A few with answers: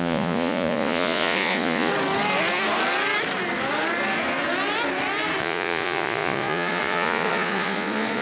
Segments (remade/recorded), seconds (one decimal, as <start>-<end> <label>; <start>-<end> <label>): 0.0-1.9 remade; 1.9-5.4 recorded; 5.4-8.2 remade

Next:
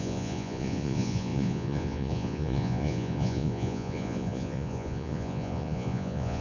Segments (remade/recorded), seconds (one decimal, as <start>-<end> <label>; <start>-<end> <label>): 0.0-6.4 remade

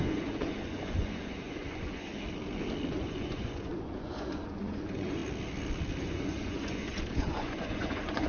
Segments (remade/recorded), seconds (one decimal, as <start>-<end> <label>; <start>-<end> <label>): 0.0-2.1 remade; 2.1-2.9 recorded; 2.9-5.2 remade; 5.2-6.0 recorded; 6.0-8.3 remade